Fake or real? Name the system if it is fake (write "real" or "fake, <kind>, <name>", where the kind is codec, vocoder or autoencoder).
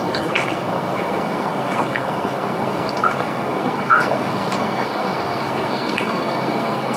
fake, codec, SNAC